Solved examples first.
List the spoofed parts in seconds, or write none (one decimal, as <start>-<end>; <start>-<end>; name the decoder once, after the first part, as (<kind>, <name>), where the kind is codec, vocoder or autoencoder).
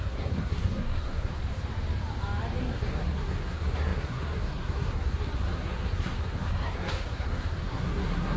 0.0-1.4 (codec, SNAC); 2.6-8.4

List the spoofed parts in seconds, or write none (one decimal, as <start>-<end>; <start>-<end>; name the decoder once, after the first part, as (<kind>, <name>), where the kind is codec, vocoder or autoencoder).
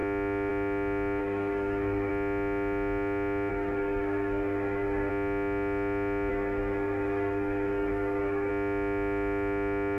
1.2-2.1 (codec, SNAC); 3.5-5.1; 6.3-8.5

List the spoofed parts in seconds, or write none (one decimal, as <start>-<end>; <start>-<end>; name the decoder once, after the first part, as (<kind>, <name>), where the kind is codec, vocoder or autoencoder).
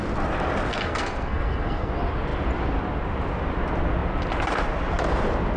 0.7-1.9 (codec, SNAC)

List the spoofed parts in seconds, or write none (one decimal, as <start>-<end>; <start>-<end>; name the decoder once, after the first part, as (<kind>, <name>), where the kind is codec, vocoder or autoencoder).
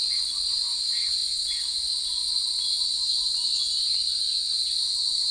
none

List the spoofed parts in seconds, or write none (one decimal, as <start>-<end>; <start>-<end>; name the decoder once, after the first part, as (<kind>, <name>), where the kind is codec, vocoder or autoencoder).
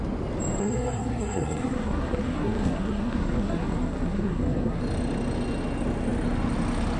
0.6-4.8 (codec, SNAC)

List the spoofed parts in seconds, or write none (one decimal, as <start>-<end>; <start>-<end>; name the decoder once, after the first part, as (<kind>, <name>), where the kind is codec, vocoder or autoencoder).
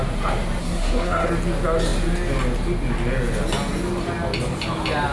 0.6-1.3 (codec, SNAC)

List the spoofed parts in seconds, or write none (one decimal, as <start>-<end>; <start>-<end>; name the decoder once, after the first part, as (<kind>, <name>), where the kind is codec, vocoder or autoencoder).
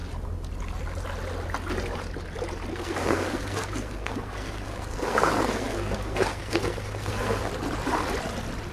2.7-7.5 (codec, SNAC)